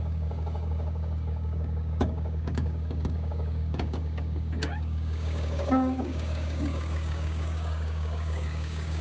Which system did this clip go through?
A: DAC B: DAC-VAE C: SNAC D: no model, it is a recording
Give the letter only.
A